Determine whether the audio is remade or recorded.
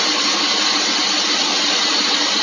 remade